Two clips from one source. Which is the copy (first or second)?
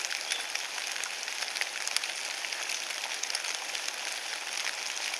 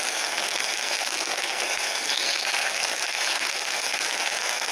second